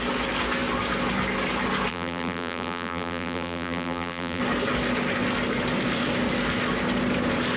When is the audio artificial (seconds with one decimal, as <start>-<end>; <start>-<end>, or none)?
1.9-4.4